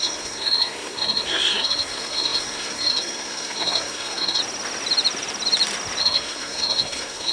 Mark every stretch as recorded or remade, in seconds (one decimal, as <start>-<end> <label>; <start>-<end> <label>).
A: 0.0-4.4 remade; 4.4-6.0 recorded; 6.0-7.3 remade